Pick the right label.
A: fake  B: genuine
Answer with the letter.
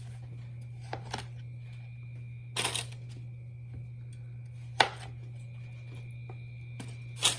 B